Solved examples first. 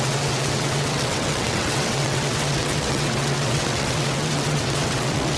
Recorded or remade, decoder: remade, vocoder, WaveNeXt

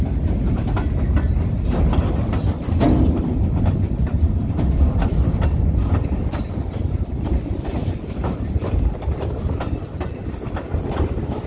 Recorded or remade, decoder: recorded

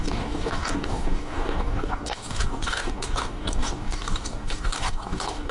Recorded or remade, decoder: remade, codec, DAC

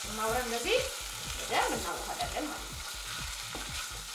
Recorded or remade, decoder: recorded